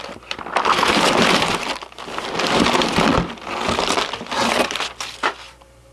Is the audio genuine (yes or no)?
yes